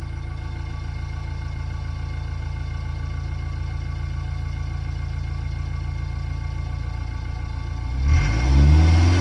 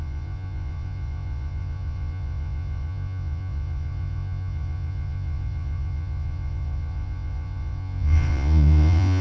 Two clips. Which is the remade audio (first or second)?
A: second